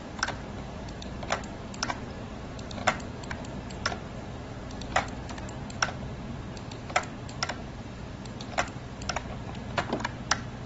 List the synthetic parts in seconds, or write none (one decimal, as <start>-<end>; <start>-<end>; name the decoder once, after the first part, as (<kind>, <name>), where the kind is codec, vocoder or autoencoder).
none